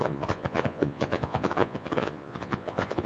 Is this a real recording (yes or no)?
no